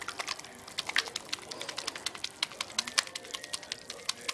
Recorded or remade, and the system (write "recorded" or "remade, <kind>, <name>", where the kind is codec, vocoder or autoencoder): recorded